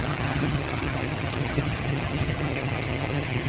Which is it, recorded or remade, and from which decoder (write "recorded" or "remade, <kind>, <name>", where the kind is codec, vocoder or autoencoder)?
remade, vocoder, HiFi-GAN